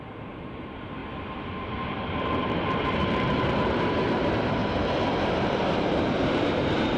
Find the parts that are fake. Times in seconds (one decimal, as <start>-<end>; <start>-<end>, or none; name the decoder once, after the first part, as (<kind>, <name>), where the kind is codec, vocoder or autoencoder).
0.0-1.0 (vocoder, BigVGAN v2); 1.5-4.6; 5.2-7.0